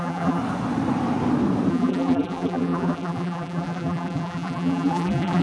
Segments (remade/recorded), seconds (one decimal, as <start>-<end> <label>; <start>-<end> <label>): 0.0-0.4 remade; 0.4-1.7 recorded; 1.7-5.4 remade